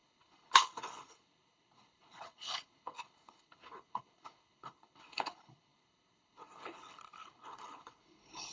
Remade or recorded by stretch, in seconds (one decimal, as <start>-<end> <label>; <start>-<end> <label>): 0.0-8.5 remade